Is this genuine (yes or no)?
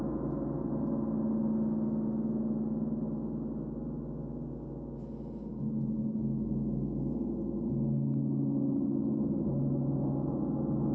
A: yes